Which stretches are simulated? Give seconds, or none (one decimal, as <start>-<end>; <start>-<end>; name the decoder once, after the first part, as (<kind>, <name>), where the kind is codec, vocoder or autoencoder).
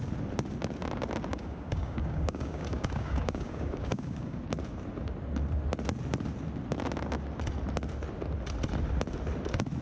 1.3-4.4 (codec, DAC)